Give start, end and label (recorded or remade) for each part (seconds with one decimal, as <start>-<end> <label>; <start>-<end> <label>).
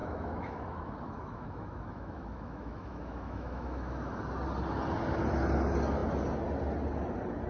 0.0-4.2 remade; 4.2-7.5 recorded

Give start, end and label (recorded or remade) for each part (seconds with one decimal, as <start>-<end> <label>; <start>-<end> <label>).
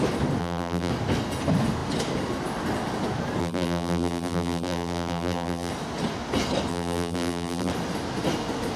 0.0-0.4 recorded; 0.4-0.9 remade; 0.9-3.4 recorded; 3.4-5.7 remade; 5.7-6.7 recorded; 6.7-7.7 remade; 7.7-8.8 recorded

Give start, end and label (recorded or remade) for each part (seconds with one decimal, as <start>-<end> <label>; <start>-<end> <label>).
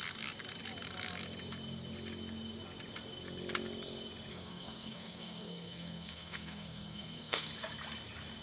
0.0-4.3 recorded; 4.3-7.5 remade; 7.5-8.4 recorded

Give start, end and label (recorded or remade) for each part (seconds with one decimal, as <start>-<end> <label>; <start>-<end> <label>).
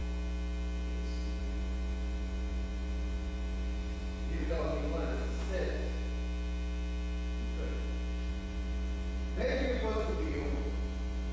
0.0-1.4 recorded; 1.4-4.7 remade; 4.7-8.3 recorded; 8.3-11.3 remade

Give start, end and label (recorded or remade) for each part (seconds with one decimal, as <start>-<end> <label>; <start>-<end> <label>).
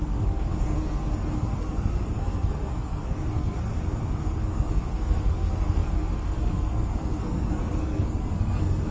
0.0-8.9 remade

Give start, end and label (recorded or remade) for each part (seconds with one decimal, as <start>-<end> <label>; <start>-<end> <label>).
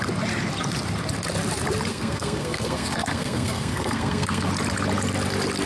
0.0-1.9 recorded; 1.9-4.5 remade; 4.5-5.7 recorded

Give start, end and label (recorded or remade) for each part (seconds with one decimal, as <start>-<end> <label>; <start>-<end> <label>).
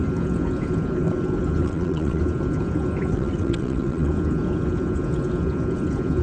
0.0-1.6 recorded; 1.6-2.2 remade; 2.2-3.1 recorded; 3.1-4.1 remade; 4.1-6.2 recorded